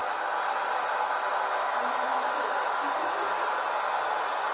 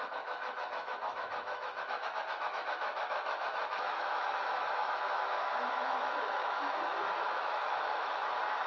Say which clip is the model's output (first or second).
second